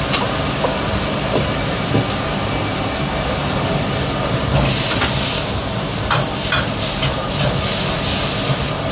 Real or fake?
real